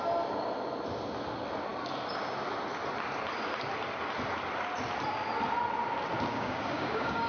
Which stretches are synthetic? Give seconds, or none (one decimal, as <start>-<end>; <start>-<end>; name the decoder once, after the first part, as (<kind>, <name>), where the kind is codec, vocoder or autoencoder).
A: 6.3-7.3 (codec, DAC)